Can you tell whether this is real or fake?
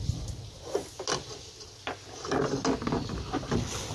real